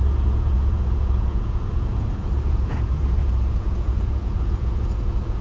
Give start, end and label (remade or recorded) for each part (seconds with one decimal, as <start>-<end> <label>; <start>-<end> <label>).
0.0-5.4 remade